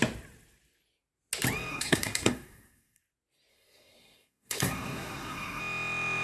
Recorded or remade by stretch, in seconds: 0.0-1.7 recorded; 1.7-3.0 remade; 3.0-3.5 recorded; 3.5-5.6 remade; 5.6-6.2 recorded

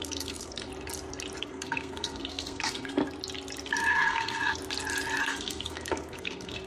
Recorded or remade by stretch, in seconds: 0.0-0.7 remade; 0.7-1.4 recorded; 1.4-3.0 remade; 3.0-3.6 recorded; 3.6-4.6 remade; 4.6-5.2 recorded; 5.2-6.7 remade

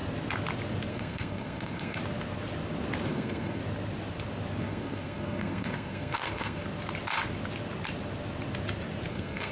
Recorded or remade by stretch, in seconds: 0.0-0.9 recorded; 0.9-2.0 remade; 2.0-3.1 recorded; 3.1-3.6 remade; 3.6-4.6 recorded; 4.6-6.6 remade; 6.6-9.1 recorded; 9.1-9.5 remade

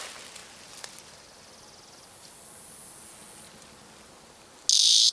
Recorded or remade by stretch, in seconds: 0.0-5.1 recorded

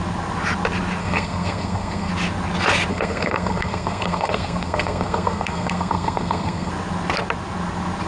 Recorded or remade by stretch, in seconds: 0.0-1.0 recorded; 1.0-2.1 remade; 2.1-2.9 recorded; 2.9-6.7 remade; 6.7-8.1 recorded

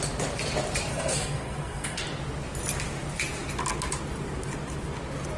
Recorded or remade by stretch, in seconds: 0.0-0.9 recorded; 0.9-2.0 remade; 2.0-5.4 recorded

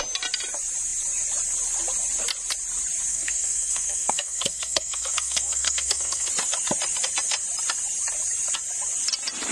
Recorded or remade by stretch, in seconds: 0.0-3.1 recorded; 3.1-6.3 remade; 6.3-9.5 recorded

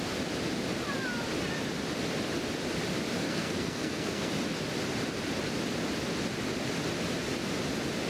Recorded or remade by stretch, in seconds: 0.0-3.2 recorded; 3.2-4.3 remade; 4.3-8.1 recorded